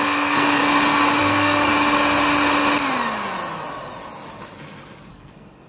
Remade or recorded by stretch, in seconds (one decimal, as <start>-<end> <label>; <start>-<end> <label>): 0.0-0.6 remade; 0.6-1.2 recorded; 1.2-1.7 remade; 1.7-5.1 recorded; 5.1-5.7 remade